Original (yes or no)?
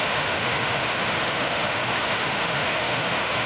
no